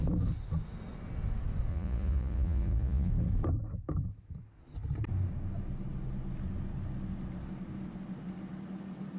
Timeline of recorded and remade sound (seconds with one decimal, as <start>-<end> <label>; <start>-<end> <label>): 0.0-1.7 recorded; 1.7-3.1 remade; 3.1-9.2 recorded